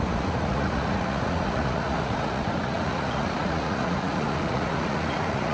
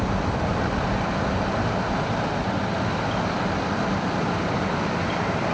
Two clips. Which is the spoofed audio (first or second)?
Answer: first